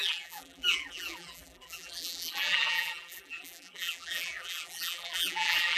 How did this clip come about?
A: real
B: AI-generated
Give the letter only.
B